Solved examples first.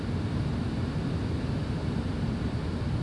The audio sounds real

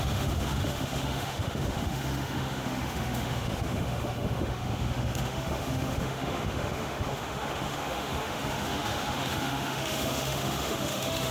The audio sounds fake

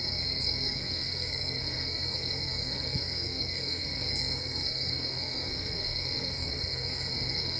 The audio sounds fake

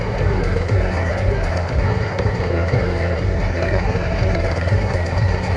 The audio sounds fake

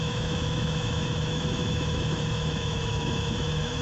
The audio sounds fake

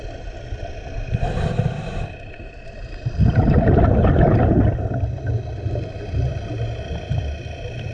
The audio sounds real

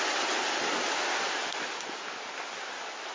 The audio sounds real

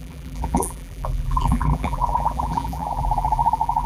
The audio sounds fake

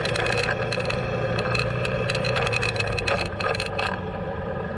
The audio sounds fake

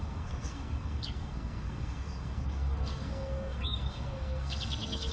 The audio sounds fake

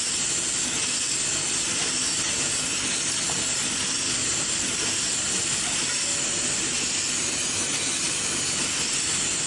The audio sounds real